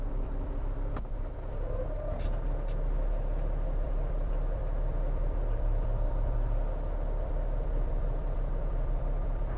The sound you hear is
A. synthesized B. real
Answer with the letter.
A